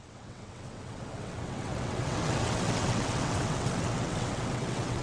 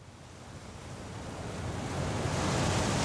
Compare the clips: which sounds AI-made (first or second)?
first